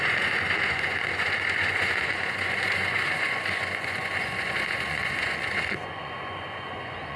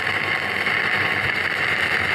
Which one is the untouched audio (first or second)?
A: second